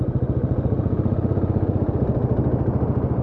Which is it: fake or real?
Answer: real